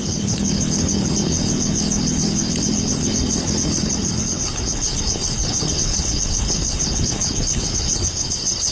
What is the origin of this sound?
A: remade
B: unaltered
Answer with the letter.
A